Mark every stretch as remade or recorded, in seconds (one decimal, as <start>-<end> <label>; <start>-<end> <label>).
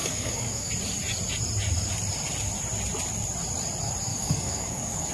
0.0-0.7 remade; 0.7-4.1 recorded; 4.1-5.1 remade